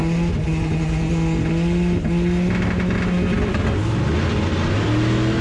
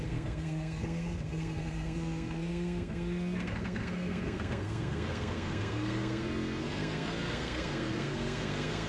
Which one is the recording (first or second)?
first